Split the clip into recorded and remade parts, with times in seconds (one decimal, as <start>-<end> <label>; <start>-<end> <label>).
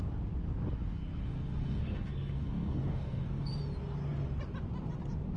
0.0-1.2 recorded; 1.2-3.5 remade; 3.5-5.4 recorded